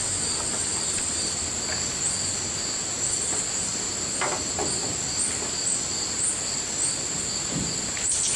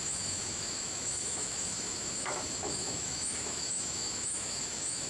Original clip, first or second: first